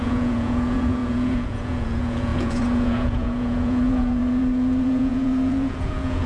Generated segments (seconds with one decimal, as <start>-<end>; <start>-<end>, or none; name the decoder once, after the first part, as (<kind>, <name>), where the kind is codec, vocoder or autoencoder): 0.0-6.3 (vocoder, Vocos)